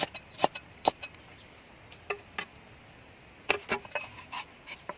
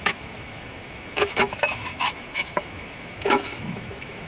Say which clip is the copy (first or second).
second